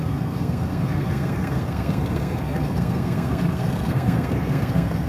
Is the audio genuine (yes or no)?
no